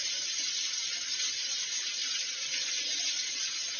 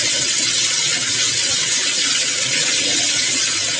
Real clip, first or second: first